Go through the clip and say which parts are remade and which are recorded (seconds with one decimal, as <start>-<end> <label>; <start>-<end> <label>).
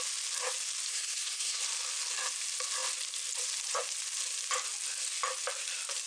0.0-0.9 recorded; 0.9-1.6 remade; 1.6-6.1 recorded